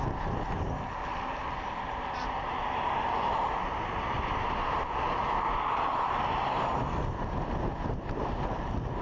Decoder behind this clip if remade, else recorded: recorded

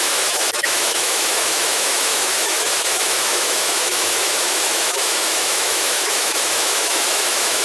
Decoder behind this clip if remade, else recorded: remade, autoencoder, DAC-VAE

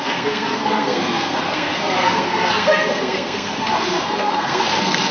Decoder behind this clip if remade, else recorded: remade, codec, SNAC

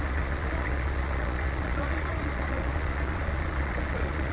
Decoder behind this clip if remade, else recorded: remade, vocoder, Vocos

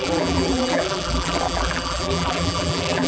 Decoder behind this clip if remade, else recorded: remade, vocoder, BigVGAN v2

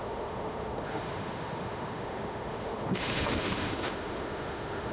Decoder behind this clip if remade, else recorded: remade, autoencoder, DAC-VAE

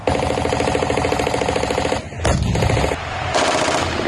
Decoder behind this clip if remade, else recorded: recorded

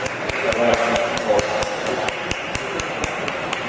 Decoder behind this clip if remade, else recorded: remade, vocoder, BigVGAN v2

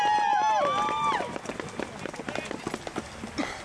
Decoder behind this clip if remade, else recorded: recorded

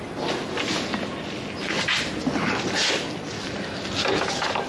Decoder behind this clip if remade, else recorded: recorded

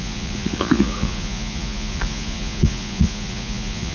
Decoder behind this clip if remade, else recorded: remade, vocoder, Vocos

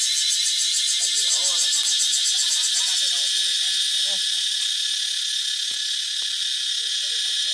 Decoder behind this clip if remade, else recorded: recorded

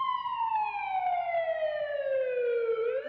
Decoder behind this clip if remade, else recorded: recorded